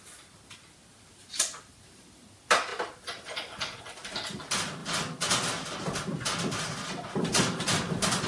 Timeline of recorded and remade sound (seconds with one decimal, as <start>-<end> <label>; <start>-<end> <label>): 0.0-8.3 recorded